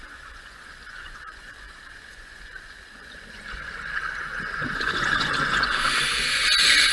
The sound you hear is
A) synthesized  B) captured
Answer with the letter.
A